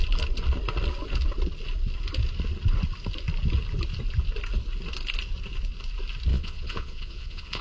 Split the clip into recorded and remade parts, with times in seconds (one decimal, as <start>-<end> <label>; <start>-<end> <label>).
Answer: 0.0-6.3 recorded; 6.3-7.6 remade